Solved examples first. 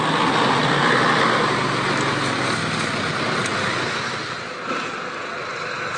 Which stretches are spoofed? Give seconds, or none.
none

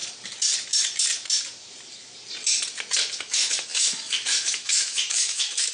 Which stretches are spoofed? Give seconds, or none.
3.2-5.7 (autoencoder, DAC-VAE)